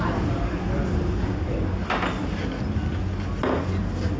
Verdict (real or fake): real